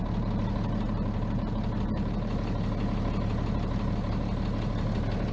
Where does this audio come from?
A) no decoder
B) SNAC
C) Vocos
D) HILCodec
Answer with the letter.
A